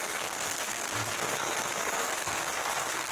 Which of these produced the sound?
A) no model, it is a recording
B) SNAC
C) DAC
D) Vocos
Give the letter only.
B